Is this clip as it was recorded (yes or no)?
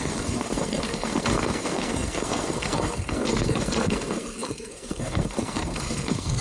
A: no